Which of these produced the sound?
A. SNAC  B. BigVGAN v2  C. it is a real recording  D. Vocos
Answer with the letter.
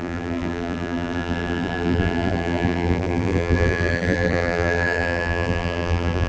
B